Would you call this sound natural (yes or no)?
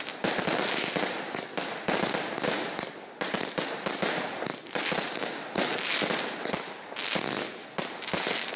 yes